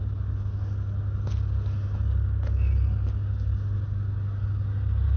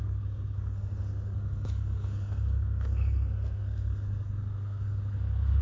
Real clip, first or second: first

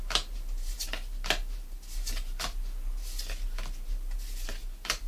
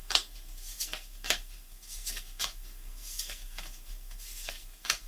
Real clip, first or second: first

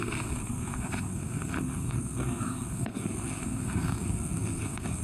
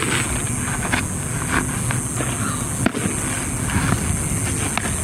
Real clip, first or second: second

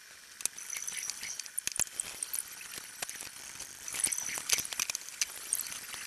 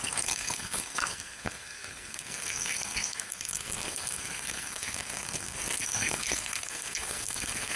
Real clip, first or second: first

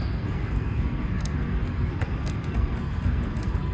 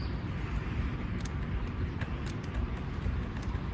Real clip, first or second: second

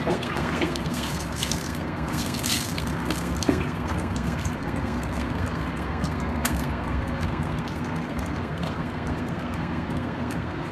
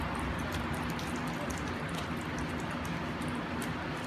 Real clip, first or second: second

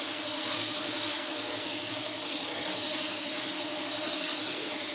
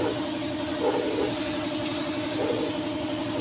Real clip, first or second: second